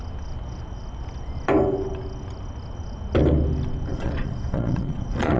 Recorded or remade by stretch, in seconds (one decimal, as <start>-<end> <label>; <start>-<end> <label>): 0.0-3.9 recorded; 3.9-5.4 remade